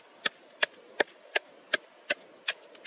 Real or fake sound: real